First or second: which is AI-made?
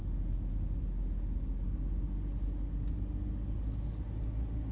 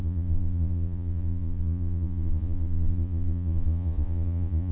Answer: second